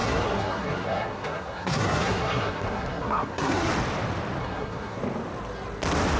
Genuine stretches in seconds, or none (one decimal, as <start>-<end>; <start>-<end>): 3.7-4.4; 5.0-6.2